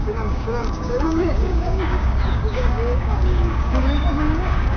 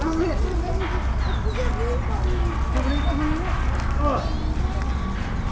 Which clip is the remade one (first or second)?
first